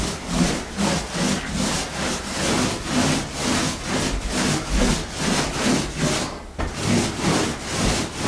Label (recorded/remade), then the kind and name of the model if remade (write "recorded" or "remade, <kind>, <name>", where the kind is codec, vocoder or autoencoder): recorded